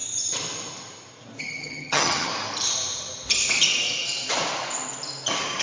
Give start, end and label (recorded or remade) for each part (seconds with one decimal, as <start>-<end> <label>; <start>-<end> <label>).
0.0-1.4 recorded; 1.4-2.3 remade; 2.3-5.6 recorded